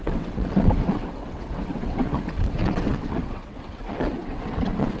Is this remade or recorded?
remade